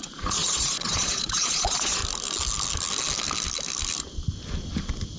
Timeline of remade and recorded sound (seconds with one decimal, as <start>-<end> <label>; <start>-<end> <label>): 0.0-2.0 remade; 2.0-5.2 recorded

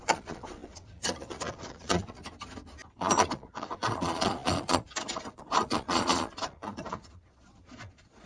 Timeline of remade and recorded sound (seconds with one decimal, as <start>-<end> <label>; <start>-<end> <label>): 0.0-2.2 remade; 2.2-2.9 recorded; 2.9-8.3 remade

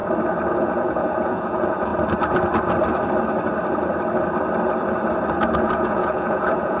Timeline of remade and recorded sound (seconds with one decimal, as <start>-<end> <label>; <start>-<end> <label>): 0.0-0.6 recorded; 0.6-1.9 remade; 1.9-5.6 recorded; 5.6-6.8 remade

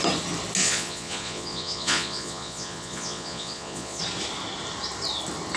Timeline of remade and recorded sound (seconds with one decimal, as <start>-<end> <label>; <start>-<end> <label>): 0.0-0.6 recorded; 0.6-4.0 remade; 4.0-5.6 recorded

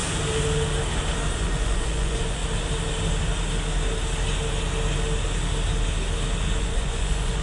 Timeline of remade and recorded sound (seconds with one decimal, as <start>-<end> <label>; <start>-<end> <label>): 0.0-1.3 recorded; 1.3-2.4 remade; 2.4-6.6 recorded; 6.6-7.4 remade

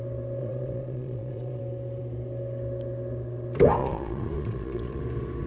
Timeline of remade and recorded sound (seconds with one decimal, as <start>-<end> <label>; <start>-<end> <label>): 0.0-0.4 recorded; 0.4-1.6 remade; 1.6-3.8 recorded; 3.8-5.0 remade; 5.0-5.5 recorded

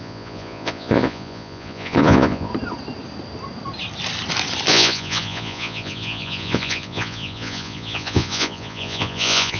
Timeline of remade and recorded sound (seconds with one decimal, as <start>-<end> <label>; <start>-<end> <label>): 0.0-2.5 remade; 2.5-4.7 recorded; 4.7-9.6 remade

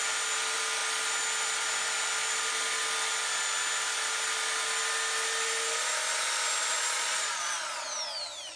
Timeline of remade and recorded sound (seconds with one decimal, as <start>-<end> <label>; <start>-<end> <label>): 0.0-6.6 recorded; 6.6-7.5 remade; 7.5-8.6 recorded